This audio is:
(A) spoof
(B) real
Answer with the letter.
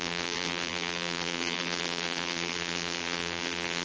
A